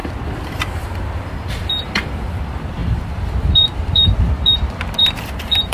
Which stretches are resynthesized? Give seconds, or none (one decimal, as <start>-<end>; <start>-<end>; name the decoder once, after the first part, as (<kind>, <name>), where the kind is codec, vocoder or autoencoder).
0.0-5.7 (vocoder, BigVGAN v2)